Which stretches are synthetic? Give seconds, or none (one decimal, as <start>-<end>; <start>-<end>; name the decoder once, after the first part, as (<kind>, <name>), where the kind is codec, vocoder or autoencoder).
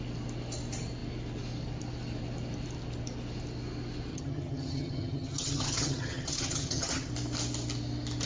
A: 4.1-7.1 (vocoder, HiFi-GAN)